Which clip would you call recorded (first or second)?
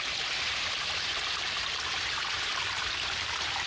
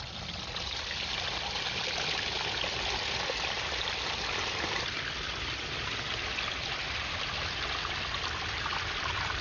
second